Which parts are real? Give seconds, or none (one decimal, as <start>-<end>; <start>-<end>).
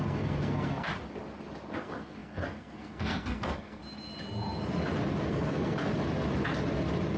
0.9-1.8; 3.8-5.3; 5.9-7.2